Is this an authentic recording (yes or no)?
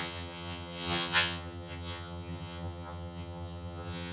no